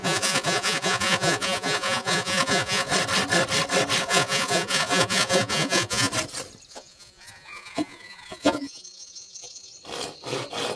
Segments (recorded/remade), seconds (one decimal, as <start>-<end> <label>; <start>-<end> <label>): 0.0-2.9 remade; 2.9-4.0 recorded; 4.0-6.1 remade; 6.1-6.7 recorded; 6.7-9.7 remade; 9.7-10.8 recorded